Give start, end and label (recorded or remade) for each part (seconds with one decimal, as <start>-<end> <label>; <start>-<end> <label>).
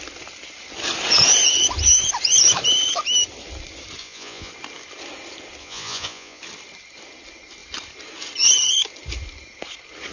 0.0-4.0 recorded; 4.0-4.5 remade; 4.5-5.6 recorded; 5.6-6.4 remade; 6.4-10.1 recorded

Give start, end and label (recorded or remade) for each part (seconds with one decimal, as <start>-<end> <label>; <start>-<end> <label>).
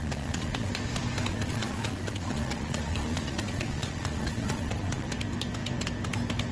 0.0-0.7 remade; 0.7-1.3 recorded; 1.3-5.1 remade; 5.1-6.5 recorded